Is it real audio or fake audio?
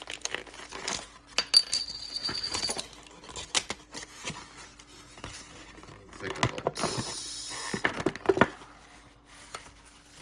real